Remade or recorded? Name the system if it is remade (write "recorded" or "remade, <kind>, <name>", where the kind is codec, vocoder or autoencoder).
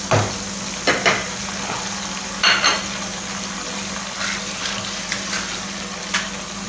recorded